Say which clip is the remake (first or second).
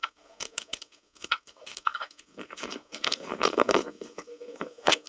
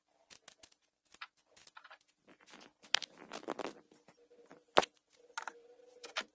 first